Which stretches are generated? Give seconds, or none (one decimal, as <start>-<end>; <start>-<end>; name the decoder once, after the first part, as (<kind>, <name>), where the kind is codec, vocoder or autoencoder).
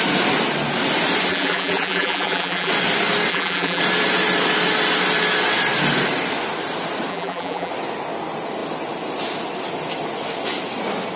1.3-2.7 (vocoder, BigVGAN v2); 3.3-3.8; 7.1-7.7